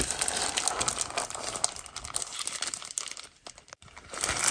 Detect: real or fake real